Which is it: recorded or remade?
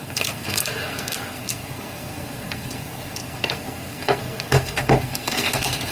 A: remade